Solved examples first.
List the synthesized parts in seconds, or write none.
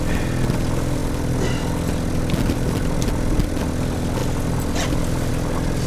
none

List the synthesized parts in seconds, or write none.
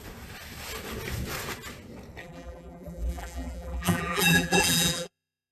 2.2-5.5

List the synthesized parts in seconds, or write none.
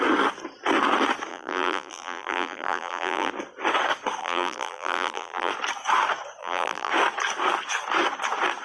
1.3-3.3; 4.2-5.5; 6.4-6.9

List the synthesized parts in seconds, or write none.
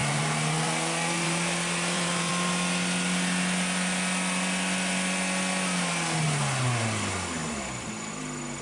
0.0-2.3; 7.4-8.1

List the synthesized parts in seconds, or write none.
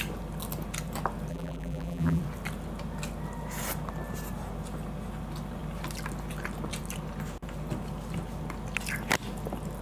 1.3-2.2